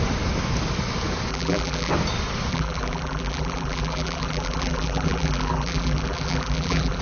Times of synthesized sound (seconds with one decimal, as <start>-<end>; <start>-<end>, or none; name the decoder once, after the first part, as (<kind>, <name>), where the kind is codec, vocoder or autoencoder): 1.3-1.9 (vocoder, BigVGAN v2); 2.5-7.0